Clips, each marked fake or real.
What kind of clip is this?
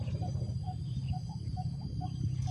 fake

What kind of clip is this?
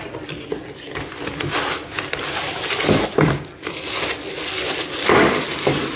real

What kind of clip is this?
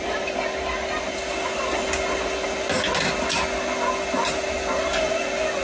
real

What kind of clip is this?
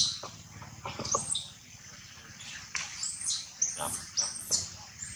real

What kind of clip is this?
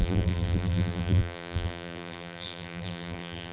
fake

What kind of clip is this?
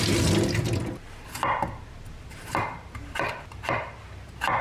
real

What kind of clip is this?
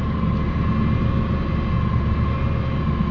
real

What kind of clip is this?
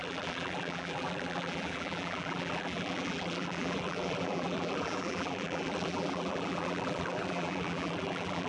fake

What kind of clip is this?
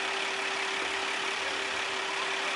fake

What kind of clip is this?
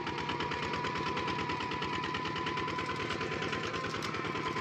real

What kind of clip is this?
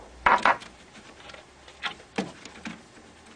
fake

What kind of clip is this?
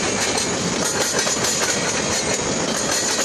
real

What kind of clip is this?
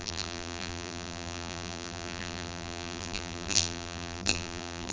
fake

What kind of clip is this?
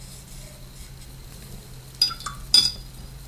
real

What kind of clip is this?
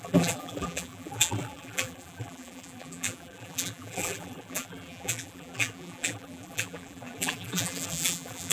fake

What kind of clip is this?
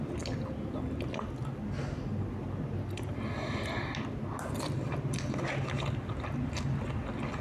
real